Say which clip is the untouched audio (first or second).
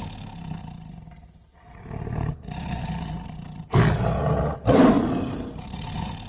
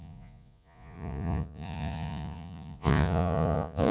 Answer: first